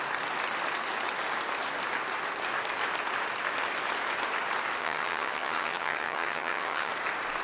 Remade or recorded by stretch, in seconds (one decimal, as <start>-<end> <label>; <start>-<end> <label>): 0.0-4.8 recorded; 4.8-6.9 remade; 6.9-7.4 recorded